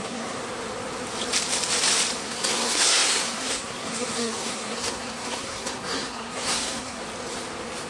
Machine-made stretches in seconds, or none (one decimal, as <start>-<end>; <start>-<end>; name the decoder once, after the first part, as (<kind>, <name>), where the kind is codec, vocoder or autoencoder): 0.0-0.4 (codec, SNAC); 2.2-7.0